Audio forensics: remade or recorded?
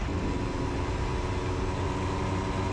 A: recorded